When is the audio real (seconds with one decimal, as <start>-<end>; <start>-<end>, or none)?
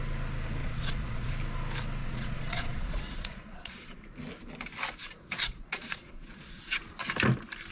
0.0-0.6; 1.3-2.0; 4.0-5.0; 6.8-7.7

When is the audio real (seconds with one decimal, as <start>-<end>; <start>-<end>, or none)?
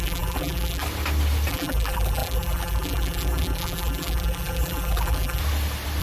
0.8-1.5; 5.4-6.0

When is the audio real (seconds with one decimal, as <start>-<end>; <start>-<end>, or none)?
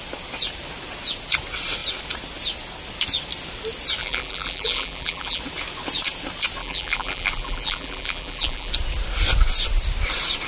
0.0-4.0; 5.4-6.6; 8.7-10.5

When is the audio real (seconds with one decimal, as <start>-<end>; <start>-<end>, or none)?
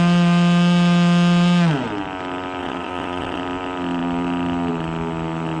0.0-2.6; 3.4-5.6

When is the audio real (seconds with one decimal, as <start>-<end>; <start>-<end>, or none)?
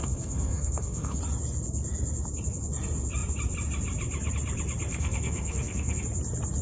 1.2-4.9; 6.0-6.6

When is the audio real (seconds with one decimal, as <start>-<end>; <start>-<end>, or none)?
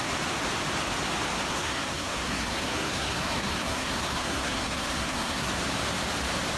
0.0-1.5; 5.5-6.6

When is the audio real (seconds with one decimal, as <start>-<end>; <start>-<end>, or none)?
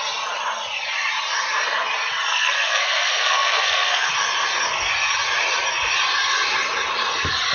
0.0-2.3; 4.1-7.5